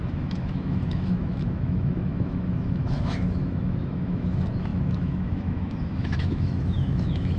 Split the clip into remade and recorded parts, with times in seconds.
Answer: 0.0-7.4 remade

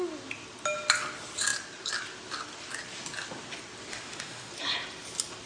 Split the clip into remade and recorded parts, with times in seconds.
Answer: 0.0-3.9 recorded; 3.9-4.5 remade; 4.5-5.5 recorded

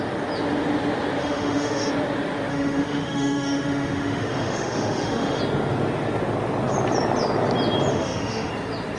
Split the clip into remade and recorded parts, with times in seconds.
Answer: 0.0-1.2 recorded; 1.2-1.9 remade; 1.9-2.5 recorded; 2.5-5.4 remade; 5.4-7.9 recorded; 7.9-8.5 remade; 8.5-9.0 recorded

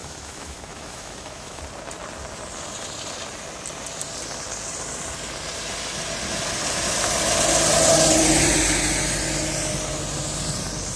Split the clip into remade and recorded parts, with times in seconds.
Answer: 0.0-1.6 remade; 1.6-11.0 recorded

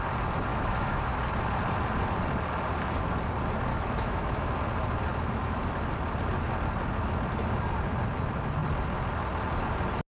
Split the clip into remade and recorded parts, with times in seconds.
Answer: 0.0-0.5 recorded; 0.5-1.2 remade; 1.2-3.7 recorded; 3.7-4.5 remade; 4.5-5.1 recorded; 5.1-5.6 remade; 5.6-10.1 recorded

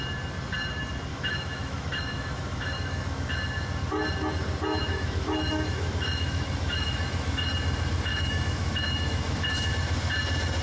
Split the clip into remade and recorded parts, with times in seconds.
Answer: 0.0-1.1 recorded; 1.1-3.4 remade; 3.4-4.8 recorded; 4.8-7.5 remade; 7.5-8.1 recorded; 8.1-9.7 remade; 9.7-10.6 recorded

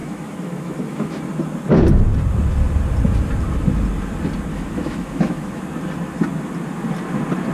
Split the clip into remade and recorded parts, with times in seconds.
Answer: 0.0-1.2 remade; 1.2-4.5 recorded; 4.5-5.6 remade; 5.6-7.5 recorded

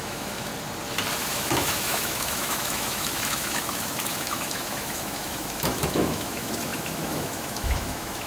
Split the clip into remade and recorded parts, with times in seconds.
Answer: 0.0-0.5 remade; 0.5-1.2 recorded; 1.2-8.3 remade